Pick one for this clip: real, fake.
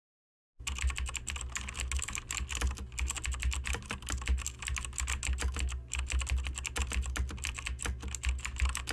real